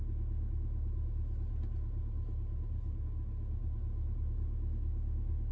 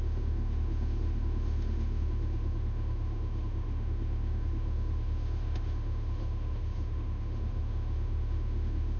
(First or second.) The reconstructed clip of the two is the second